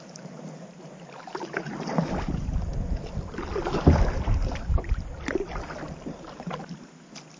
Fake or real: real